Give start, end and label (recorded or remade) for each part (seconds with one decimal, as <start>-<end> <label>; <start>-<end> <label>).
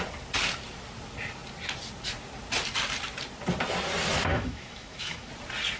0.0-4.3 recorded; 4.3-5.3 remade; 5.3-5.8 recorded